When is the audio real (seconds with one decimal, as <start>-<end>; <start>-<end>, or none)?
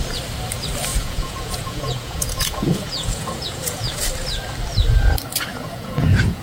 0.0-0.9; 4.0-5.5